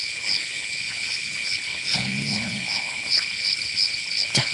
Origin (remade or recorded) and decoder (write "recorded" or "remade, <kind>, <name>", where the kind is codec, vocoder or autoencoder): remade, codec, HILCodec